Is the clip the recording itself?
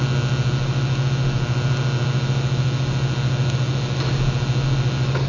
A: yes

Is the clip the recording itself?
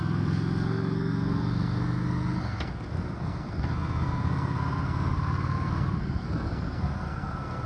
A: no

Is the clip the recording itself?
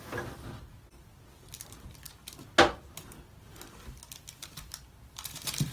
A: yes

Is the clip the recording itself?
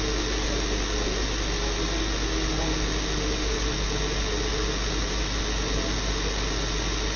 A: yes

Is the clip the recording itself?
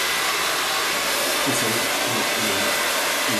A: yes